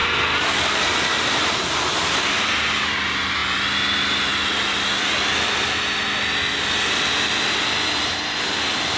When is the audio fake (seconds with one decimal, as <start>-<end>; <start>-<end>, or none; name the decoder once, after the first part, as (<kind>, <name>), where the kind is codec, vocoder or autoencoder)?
none